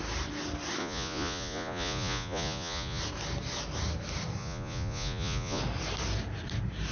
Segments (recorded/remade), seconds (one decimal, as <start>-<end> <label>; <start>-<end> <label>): 0.0-0.8 recorded; 0.8-3.0 remade; 3.0-4.4 recorded; 4.4-5.6 remade; 5.6-6.9 recorded